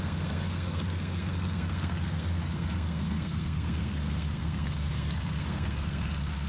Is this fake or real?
fake